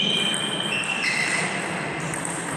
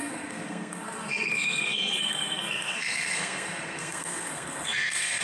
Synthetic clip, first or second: second